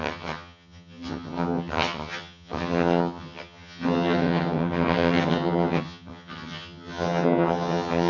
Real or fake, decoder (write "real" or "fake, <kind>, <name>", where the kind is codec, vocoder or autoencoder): fake, vocoder, HiFi-GAN